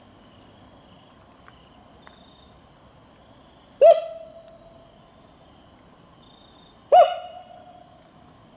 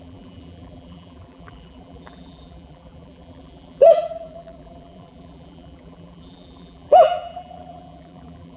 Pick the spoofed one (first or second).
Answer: second